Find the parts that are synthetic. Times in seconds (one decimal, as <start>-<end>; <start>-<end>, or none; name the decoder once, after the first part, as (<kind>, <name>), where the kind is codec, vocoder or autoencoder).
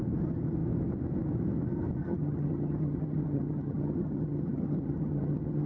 2.0-5.7 (vocoder, HiFi-GAN)